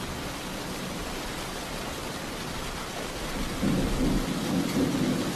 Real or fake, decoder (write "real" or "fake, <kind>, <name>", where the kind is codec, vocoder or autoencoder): real